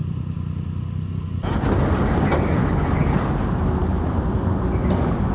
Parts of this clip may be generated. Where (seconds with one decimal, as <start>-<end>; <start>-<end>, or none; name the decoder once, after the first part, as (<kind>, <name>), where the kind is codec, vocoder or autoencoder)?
3.8-4.4 (vocoder, BigVGAN v2)